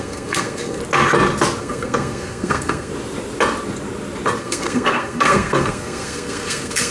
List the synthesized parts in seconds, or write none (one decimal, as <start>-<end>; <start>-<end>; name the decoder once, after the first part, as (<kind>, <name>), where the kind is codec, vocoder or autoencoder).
0.0-0.8 (codec, SNAC); 1.6-2.9; 4.4-6.9